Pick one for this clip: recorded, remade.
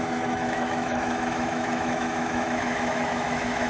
remade